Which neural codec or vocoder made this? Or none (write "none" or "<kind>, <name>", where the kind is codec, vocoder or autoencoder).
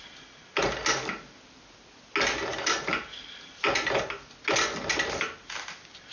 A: none